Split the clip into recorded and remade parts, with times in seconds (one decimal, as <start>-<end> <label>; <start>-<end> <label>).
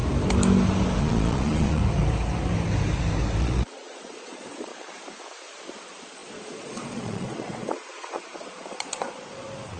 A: 0.0-1.0 recorded; 1.0-1.8 remade; 1.8-3.4 recorded; 3.4-4.7 remade; 4.7-5.8 recorded; 5.8-9.8 remade